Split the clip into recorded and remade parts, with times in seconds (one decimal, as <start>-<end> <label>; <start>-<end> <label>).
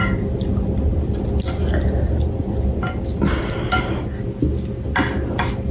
0.0-5.7 recorded